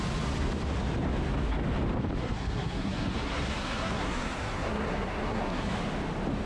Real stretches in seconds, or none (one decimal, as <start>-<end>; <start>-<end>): 0.0-2.2; 5.7-6.5